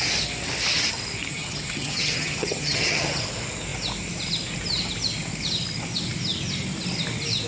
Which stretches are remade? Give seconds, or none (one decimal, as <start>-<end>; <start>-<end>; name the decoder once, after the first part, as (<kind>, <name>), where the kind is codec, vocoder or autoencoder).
1.3-3.2 (vocoder, HiFi-GAN)